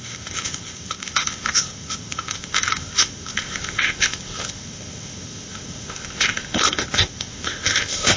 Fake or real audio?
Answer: fake